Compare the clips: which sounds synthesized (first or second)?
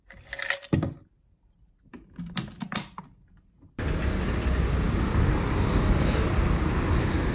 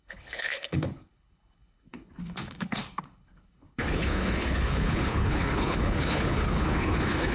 second